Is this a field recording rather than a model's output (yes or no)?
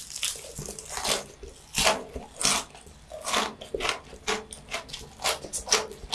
yes